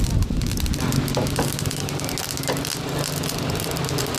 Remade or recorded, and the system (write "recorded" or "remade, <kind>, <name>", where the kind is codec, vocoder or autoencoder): recorded